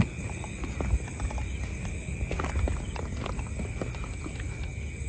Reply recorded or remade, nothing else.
recorded